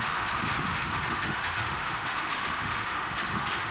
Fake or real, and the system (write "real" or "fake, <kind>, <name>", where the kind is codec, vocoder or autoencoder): fake, autoencoder, DAC-VAE